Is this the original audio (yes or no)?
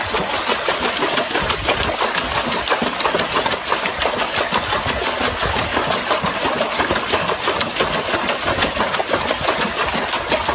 yes